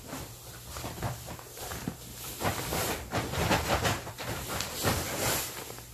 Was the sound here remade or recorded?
recorded